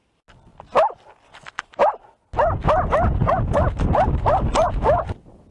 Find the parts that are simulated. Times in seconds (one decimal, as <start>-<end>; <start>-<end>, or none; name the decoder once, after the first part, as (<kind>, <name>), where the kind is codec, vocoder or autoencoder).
none